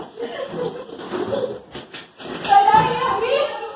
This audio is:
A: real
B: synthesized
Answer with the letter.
A